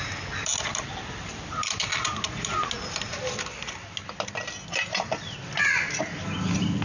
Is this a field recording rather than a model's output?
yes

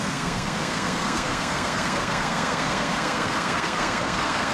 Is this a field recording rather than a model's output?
no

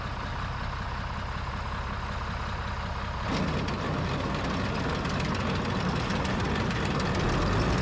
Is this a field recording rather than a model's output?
yes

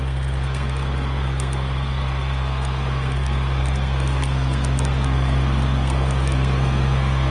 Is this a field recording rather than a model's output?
no